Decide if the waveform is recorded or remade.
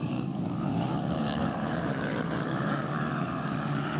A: remade